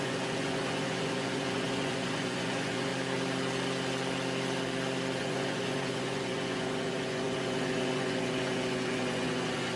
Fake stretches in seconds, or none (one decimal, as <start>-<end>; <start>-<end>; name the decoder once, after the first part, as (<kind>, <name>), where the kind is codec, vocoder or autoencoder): 0.0-2.9 (vocoder, Vocos); 5.2-9.8